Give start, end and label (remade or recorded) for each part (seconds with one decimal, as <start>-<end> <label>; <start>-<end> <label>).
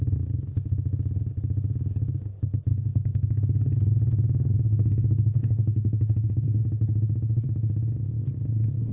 0.0-2.7 recorded; 2.7-3.7 remade; 3.7-4.7 recorded; 4.7-6.6 remade; 6.6-8.9 recorded